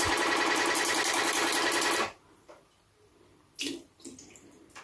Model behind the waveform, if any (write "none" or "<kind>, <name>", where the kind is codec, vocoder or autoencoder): none